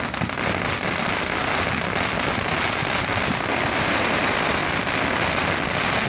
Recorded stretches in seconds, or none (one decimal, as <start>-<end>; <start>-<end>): 0.0-6.1